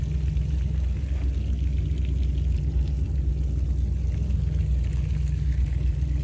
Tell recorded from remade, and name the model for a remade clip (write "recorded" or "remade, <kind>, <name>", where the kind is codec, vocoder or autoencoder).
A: recorded